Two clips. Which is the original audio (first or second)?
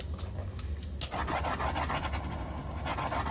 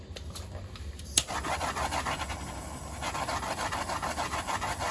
first